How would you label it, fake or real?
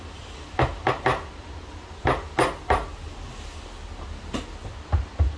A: real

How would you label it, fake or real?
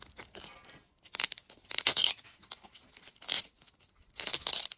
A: real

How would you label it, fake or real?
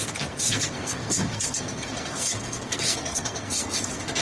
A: fake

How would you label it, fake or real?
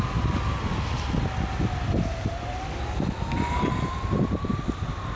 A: real